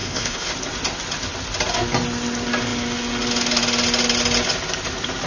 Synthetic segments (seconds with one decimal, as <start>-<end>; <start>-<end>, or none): 0.0-0.5